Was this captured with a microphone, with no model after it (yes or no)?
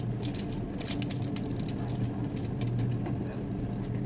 yes